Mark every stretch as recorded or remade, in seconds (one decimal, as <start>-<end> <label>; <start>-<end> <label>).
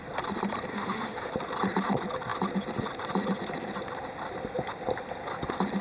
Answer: 0.0-0.7 recorded; 0.7-1.3 remade; 1.3-5.8 recorded